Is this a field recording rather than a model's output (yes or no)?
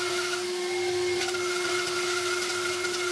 yes